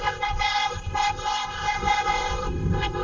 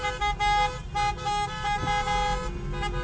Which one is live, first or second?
second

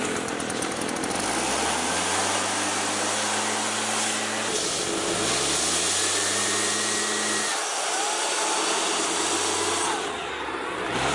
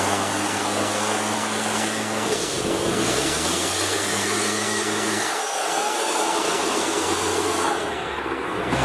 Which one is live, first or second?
first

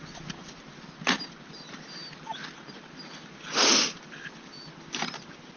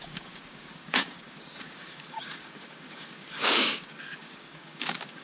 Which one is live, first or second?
first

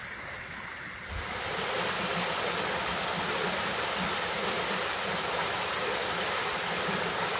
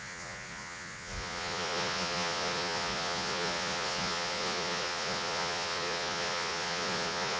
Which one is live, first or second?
first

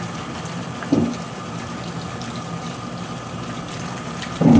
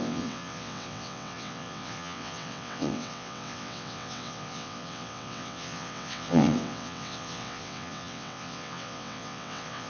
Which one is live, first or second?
first